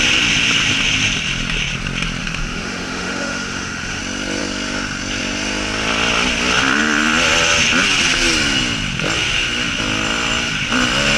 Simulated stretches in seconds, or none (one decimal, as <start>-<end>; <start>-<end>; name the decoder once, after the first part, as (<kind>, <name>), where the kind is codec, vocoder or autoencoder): 2.2-4.0 (autoencoder, DAC-VAE)